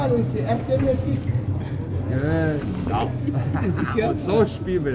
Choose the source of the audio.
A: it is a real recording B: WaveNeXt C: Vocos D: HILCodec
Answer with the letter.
A